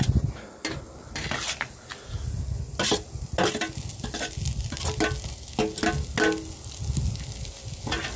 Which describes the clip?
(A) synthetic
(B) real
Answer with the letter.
B